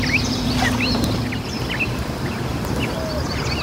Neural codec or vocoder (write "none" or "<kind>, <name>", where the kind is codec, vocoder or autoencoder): none